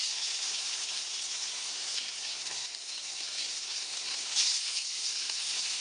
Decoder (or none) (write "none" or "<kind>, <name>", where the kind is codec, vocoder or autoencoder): codec, SNAC